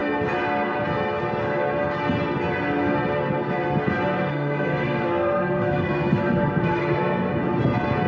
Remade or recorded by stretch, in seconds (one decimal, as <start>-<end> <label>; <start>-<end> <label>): 0.0-4.3 recorded; 4.3-7.3 remade; 7.3-8.1 recorded